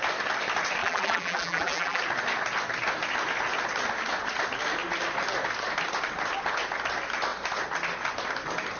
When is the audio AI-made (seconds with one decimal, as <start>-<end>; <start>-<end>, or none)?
0.8-2.0